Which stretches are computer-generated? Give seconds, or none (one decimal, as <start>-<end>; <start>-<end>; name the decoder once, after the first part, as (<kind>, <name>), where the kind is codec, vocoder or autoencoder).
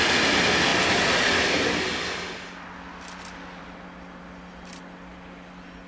none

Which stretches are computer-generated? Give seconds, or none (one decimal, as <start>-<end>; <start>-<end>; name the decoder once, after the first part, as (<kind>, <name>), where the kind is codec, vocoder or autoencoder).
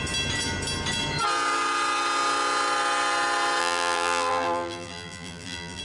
3.6-5.8 (vocoder, BigVGAN v2)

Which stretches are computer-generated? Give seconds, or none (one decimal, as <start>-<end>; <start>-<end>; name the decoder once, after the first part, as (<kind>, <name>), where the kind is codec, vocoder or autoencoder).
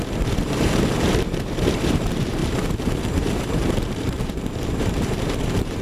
0.0-5.8 (vocoder, BigVGAN v2)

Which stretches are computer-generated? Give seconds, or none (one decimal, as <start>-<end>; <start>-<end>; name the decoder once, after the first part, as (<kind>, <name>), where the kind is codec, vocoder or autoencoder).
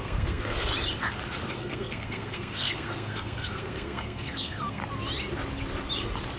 0.0-0.7 (codec, SNAC); 1.5-4.8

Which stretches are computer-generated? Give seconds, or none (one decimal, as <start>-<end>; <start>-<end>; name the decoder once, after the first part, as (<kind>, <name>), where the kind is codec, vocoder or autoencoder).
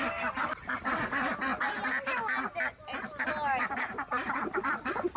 none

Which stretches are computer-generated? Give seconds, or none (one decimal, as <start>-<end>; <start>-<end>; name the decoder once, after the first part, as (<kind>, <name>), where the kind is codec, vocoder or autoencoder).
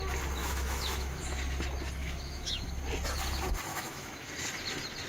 0.4-1.2 (autoencoder, DAC-VAE); 2.0-2.7; 3.7-4.3